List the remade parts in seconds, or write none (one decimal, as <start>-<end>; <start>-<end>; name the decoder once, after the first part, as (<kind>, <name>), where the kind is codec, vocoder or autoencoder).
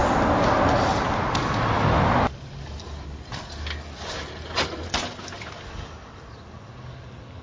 none